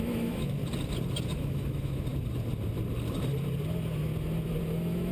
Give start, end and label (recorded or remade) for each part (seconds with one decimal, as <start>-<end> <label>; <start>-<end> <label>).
0.0-0.6 remade; 0.6-1.3 recorded; 1.3-2.1 remade; 2.1-4.6 recorded; 4.6-5.1 remade